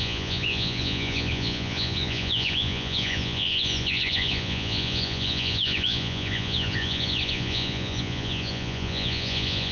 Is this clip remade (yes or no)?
yes